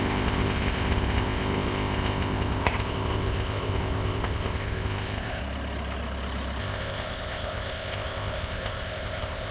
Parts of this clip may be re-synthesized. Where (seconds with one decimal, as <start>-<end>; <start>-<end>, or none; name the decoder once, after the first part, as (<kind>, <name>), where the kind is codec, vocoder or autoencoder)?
0.0-5.4 (codec, ZipCodec); 6.6-9.5